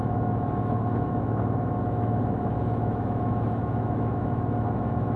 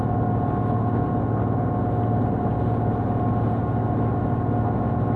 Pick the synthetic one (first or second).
first